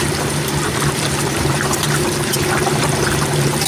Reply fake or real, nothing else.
fake